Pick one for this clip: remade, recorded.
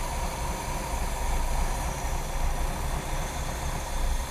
recorded